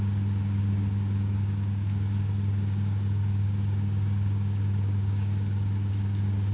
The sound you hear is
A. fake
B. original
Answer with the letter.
A